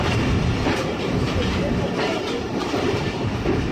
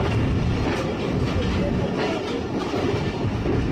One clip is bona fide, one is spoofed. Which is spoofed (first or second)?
first